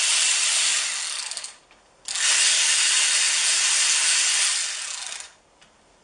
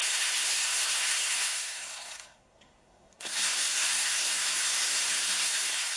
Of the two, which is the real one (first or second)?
first